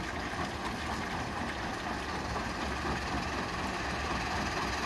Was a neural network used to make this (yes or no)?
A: no